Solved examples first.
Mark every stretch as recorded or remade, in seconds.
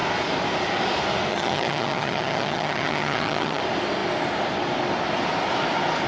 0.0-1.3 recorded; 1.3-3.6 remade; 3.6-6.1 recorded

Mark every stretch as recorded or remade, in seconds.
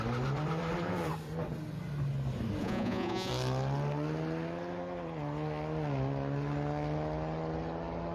0.0-2.6 recorded; 2.6-3.3 remade; 3.3-8.1 recorded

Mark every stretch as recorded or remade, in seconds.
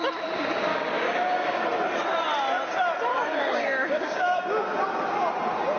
0.0-0.7 recorded; 0.7-1.6 remade; 1.6-3.1 recorded; 3.1-4.4 remade; 4.4-5.8 recorded